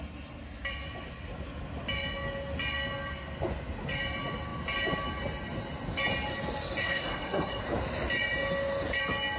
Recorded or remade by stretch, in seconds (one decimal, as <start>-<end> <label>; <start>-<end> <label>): 0.0-6.8 recorded; 6.8-7.6 remade; 7.6-9.4 recorded